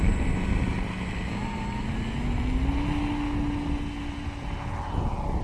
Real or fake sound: real